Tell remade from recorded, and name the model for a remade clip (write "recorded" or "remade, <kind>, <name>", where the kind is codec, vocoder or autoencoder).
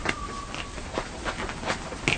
recorded